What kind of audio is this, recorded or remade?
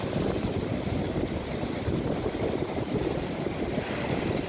recorded